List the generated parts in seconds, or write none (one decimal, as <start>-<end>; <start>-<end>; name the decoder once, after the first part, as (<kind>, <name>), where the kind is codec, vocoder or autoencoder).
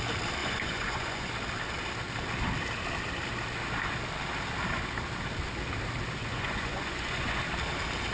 0.4-1.3 (vocoder, Vocos); 6.2-7.4